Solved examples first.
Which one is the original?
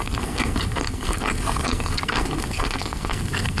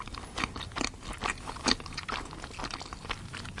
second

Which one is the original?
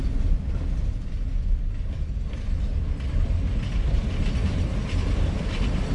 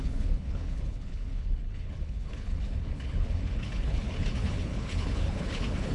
first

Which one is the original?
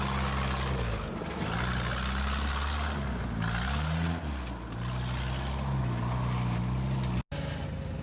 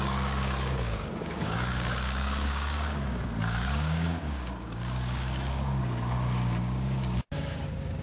first